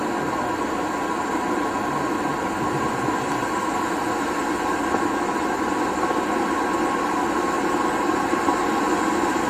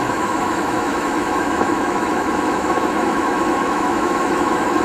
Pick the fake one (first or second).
second